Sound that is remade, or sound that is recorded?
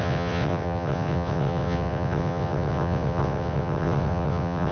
remade